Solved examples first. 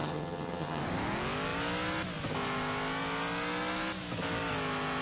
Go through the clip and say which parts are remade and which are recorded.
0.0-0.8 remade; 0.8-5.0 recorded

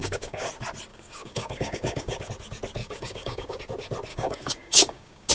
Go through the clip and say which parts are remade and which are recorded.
0.0-0.5 remade; 0.5-0.9 recorded; 0.9-2.3 remade; 2.3-2.8 recorded; 2.8-3.6 remade; 3.6-4.1 recorded; 4.1-5.3 remade

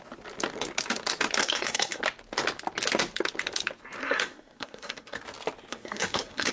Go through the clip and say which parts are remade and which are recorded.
0.0-1.4 recorded; 1.4-2.0 remade; 2.0-4.0 recorded; 4.0-5.2 remade; 5.2-5.7 recorded; 5.7-6.5 remade

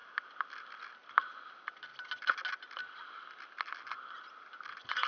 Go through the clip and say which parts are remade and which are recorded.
0.0-5.1 recorded

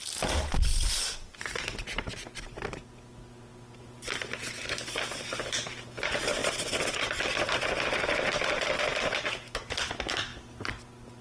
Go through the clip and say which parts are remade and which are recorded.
0.0-11.2 recorded

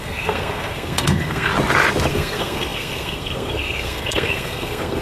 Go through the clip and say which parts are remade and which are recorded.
0.0-1.5 remade; 1.5-2.1 recorded; 2.1-5.0 remade

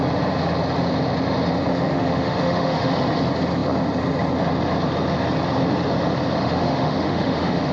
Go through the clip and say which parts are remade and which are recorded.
0.0-1.7 recorded; 1.7-2.9 remade; 2.9-6.4 recorded; 6.4-7.7 remade